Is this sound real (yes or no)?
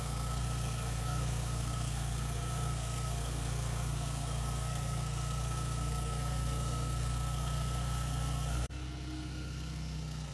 no